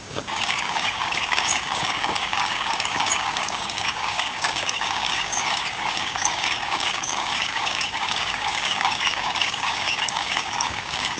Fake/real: fake